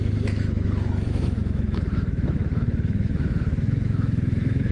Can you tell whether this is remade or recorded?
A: remade